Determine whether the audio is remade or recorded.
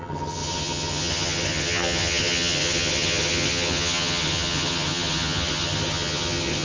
remade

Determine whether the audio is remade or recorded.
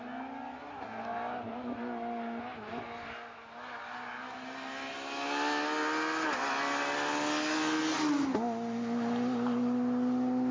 recorded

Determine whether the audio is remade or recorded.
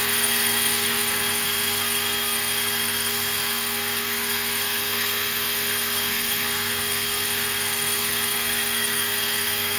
remade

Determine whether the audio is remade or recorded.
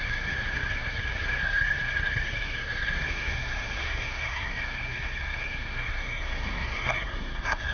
remade